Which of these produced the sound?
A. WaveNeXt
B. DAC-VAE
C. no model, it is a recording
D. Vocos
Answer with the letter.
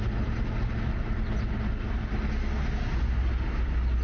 C